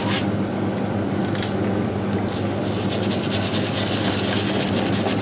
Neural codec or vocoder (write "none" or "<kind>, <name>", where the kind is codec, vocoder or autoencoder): none